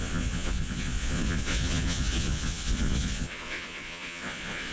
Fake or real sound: fake